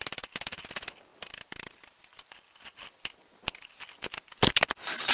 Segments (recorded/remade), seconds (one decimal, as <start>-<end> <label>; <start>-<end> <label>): 0.0-1.1 recorded; 1.1-2.4 remade; 2.4-3.3 recorded; 3.3-3.8 remade; 3.8-5.1 recorded